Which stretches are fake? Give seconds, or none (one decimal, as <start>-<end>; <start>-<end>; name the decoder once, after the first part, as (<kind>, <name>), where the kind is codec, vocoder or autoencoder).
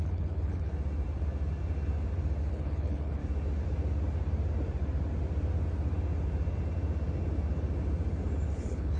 0.0-0.7 (codec, HILCodec); 2.5-3.2; 8.5-9.0